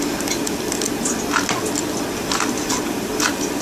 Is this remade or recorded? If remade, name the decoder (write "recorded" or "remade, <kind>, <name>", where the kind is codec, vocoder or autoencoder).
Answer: recorded